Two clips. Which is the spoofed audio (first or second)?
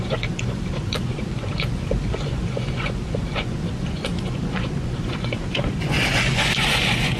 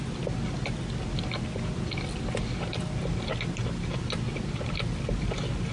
first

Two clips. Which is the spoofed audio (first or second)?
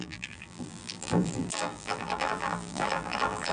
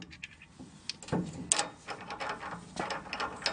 first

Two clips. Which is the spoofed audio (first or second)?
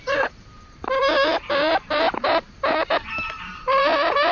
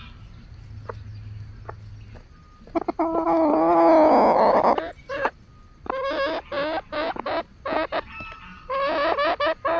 first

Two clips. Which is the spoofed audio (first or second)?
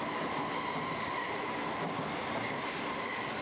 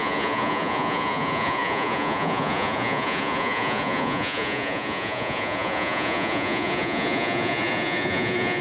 second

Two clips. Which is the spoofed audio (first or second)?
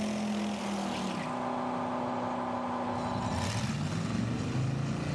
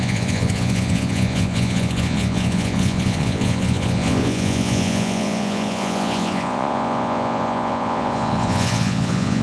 second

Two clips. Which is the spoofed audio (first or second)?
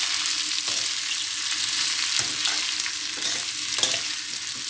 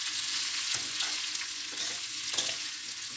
second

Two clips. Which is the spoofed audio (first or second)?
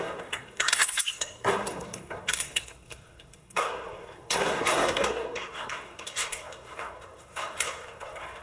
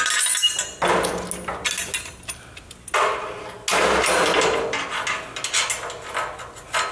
first